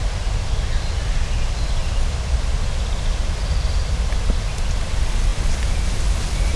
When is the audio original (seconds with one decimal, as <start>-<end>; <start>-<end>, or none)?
0.0-6.6